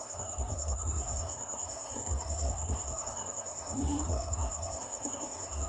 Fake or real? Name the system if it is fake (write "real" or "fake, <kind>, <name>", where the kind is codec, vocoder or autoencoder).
fake, codec, SNAC